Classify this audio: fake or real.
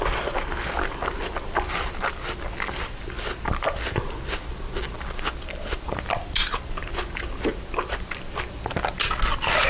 real